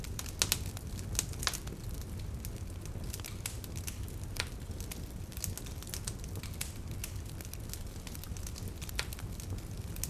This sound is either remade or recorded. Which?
recorded